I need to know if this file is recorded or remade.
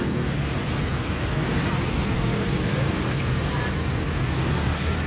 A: recorded